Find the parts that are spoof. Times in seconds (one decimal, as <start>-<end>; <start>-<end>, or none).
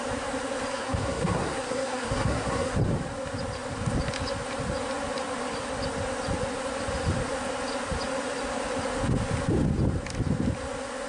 0.7-2.7